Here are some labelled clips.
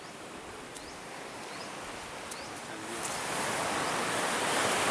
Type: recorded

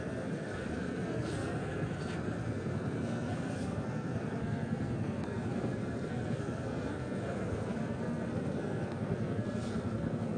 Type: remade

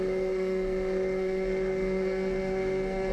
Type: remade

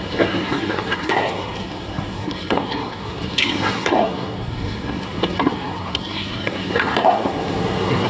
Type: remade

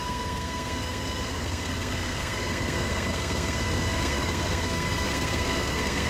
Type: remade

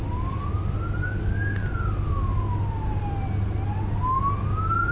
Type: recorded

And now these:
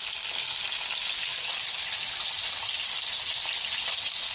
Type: recorded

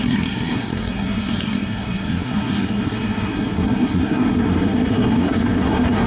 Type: remade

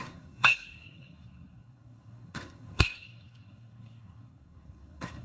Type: remade